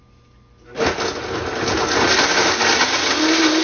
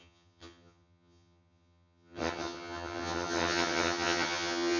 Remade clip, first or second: second